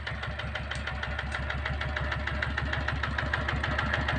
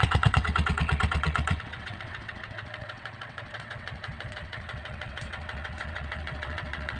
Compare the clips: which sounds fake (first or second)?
second